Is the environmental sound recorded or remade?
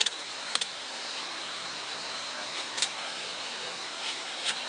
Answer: remade